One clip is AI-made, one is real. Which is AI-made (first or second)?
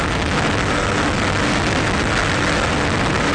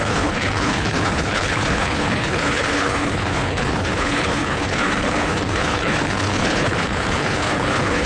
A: second